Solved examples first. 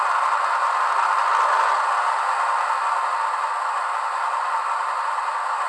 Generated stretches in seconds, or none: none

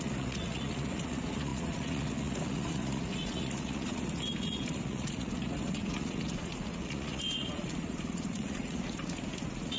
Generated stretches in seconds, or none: 0.0-9.8 (vocoder, Vocos)

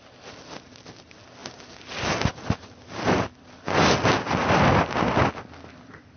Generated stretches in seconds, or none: none

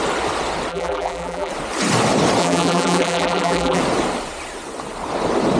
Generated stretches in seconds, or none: 0.7-1.5 (vocoder, BigVGAN v2); 2.4-3.8

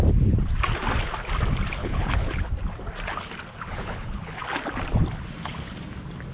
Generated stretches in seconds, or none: 1.8-2.5 (codec, HILCodec); 3.7-4.4

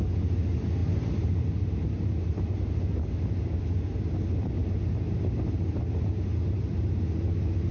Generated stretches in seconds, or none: none

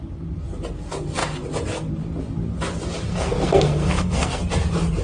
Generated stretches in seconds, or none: 3.1-4.4 (codec, SNAC)